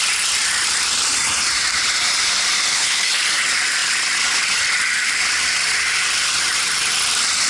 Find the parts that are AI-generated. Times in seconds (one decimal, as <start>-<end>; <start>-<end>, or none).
2.7-3.2